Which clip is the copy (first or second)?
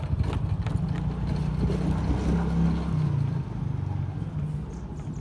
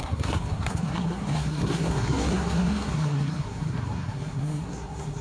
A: second